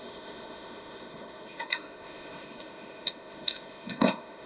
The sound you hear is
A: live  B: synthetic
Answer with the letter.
B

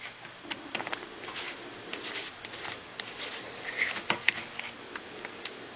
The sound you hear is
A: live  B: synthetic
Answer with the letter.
A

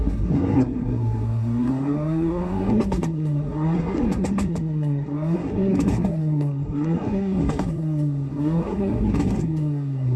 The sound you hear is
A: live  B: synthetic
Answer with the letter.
B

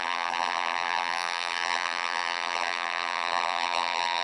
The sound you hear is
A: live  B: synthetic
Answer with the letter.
B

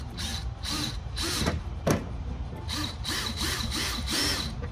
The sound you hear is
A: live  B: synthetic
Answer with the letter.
B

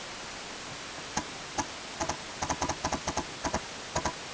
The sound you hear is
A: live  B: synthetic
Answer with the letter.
A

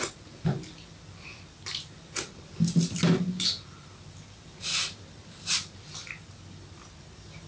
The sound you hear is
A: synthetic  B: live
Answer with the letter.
B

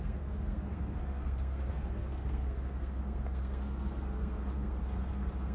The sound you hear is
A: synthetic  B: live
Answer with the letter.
A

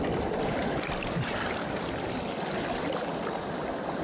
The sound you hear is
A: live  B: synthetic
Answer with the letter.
B